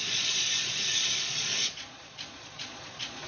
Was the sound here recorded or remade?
remade